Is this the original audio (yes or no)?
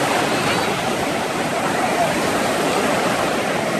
yes